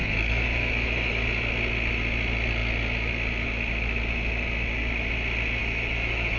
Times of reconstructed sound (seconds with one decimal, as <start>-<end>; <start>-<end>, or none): 0.0-1.2; 5.6-6.4